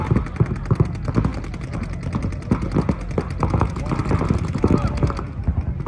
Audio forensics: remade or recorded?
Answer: recorded